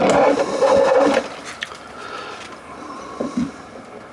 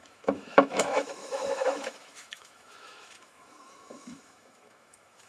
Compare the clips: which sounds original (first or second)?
first